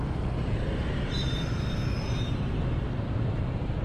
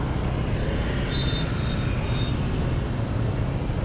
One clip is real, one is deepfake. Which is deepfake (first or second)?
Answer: first